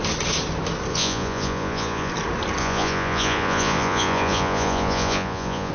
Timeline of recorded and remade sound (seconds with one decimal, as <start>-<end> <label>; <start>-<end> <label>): 0.0-0.9 recorded; 0.9-2.1 remade; 2.1-2.6 recorded; 2.6-5.7 remade